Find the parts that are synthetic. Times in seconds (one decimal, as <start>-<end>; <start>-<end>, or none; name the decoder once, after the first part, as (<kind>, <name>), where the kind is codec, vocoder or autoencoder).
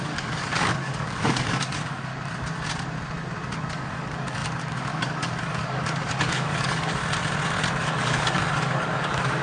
0.0-2.1 (codec, DAC); 3.7-7.0; 7.8-9.4